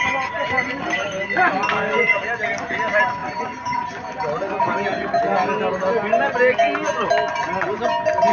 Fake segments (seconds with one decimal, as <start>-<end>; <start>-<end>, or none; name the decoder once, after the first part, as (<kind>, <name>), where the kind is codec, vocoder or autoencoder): none

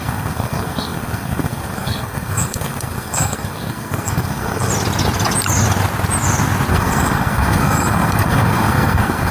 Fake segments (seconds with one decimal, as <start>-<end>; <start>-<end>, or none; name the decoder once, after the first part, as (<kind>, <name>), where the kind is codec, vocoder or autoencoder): 0.0-4.7 (codec, SNAC); 6.7-9.3

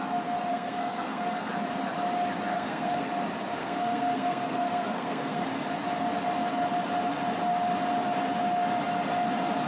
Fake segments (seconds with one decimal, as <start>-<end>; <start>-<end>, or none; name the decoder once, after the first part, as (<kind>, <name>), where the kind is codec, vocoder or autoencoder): 0.5-1.5 (codec, SNAC); 2.5-3.1; 3.6-5.4

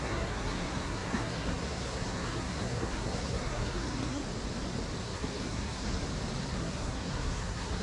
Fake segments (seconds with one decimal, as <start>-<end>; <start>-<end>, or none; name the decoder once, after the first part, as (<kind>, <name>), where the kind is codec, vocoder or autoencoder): 0.0-4.2 (codec, SNAC); 5.0-6.0; 6.5-7.8

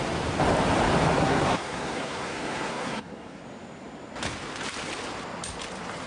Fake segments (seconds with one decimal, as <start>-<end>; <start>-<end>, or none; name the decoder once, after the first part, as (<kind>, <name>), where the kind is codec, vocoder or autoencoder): 1.2-3.4 (codec, SNAC)

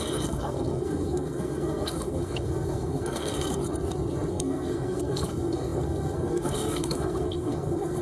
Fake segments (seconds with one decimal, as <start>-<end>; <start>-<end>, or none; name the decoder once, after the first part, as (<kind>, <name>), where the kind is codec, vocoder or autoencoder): 0.0-3.6 (codec, SNAC); 4.3-8.0

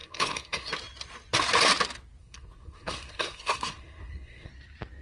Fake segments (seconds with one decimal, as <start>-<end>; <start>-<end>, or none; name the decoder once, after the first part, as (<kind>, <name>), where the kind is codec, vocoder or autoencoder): 0.0-0.7 (codec, SNAC); 2.2-4.5